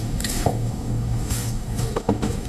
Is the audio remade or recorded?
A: remade